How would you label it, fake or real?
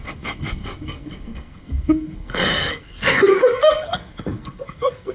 fake